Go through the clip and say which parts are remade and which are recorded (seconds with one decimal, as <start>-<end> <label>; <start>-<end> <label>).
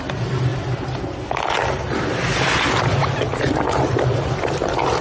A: 0.0-5.0 recorded